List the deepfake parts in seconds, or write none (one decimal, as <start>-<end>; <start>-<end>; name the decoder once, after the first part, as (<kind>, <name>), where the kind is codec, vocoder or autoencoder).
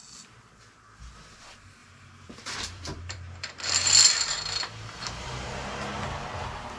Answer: 1.8-5.5 (vocoder, BigVGAN v2)